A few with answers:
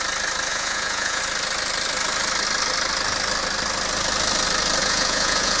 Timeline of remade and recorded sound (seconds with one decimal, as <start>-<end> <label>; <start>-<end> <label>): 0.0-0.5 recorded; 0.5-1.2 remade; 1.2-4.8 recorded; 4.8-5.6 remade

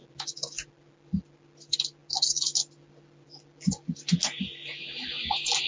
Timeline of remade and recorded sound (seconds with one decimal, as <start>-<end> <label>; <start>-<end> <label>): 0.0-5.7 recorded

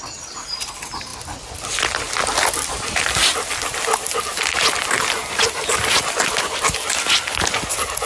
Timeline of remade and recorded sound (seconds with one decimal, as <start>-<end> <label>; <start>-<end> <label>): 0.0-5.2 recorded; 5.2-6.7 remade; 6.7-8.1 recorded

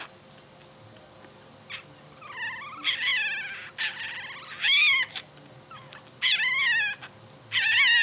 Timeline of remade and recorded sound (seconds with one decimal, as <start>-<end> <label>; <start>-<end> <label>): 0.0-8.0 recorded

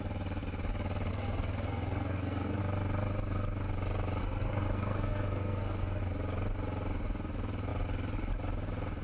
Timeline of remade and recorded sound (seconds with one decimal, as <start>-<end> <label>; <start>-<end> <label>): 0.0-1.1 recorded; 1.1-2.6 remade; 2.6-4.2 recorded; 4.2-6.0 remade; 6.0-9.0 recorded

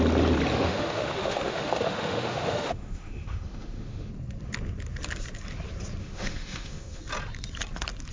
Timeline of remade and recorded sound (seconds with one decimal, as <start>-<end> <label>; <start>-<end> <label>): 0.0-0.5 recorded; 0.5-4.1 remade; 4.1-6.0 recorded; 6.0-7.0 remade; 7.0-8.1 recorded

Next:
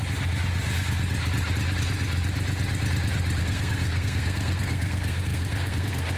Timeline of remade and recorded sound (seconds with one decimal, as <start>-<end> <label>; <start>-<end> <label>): 0.0-3.4 recorded; 3.4-6.2 remade